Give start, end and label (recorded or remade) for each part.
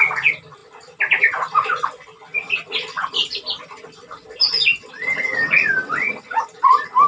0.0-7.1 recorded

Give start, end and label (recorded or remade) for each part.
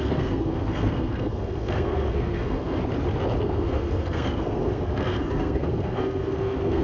0.0-2.8 remade; 2.8-3.4 recorded; 3.4-6.8 remade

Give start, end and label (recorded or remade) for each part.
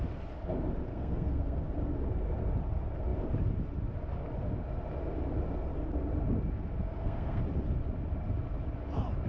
0.0-0.9 recorded; 0.9-1.6 remade; 1.6-6.8 recorded; 6.8-7.4 remade; 7.4-9.3 recorded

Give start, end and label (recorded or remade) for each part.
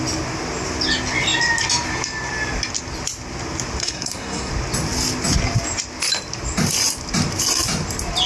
0.0-3.8 recorded; 3.8-4.5 remade; 4.5-8.3 recorded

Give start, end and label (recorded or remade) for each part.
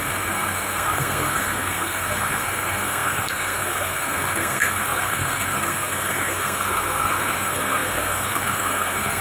0.0-9.2 remade